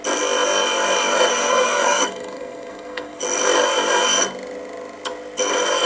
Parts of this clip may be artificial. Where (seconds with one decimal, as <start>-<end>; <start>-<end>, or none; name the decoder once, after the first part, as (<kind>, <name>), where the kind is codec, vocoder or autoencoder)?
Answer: 1.3-3.2 (codec, SNAC)